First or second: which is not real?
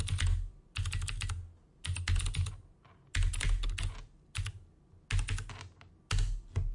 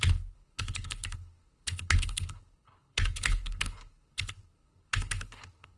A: second